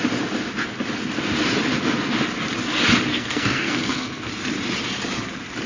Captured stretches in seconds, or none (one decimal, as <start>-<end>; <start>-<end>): 0.0-3.1; 4.3-5.7

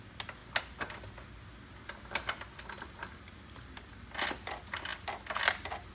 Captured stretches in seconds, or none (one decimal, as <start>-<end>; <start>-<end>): 0.0-5.9

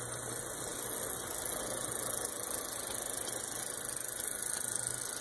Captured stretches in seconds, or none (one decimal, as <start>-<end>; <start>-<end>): 0.0-5.2

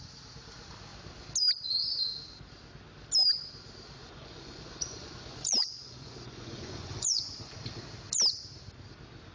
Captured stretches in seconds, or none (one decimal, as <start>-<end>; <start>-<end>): 0.0-4.0; 7.6-9.3

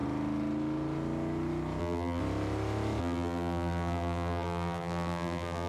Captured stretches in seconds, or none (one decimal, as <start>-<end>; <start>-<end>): 0.0-1.8; 2.2-3.0

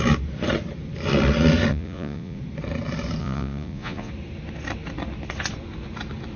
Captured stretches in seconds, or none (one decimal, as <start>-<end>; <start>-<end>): 0.0-1.7; 2.4-3.2; 4.1-6.4

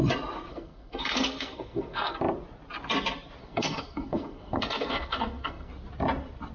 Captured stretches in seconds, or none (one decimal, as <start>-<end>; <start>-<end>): 0.0-0.5; 2.2-3.4; 5.7-6.5

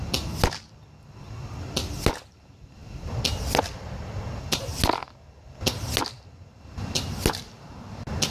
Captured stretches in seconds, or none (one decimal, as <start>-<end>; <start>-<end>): 0.0-2.8; 4.0-8.3